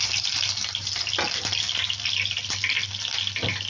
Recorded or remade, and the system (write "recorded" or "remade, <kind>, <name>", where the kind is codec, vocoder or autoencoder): recorded